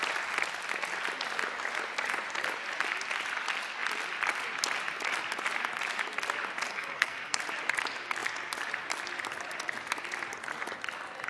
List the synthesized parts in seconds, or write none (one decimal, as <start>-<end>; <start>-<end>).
6.7-7.4